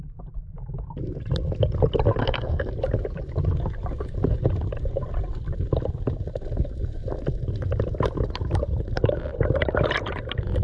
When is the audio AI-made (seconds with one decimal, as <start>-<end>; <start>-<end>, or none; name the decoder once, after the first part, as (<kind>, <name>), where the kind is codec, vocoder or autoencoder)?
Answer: 2.2-2.7 (codec, SNAC)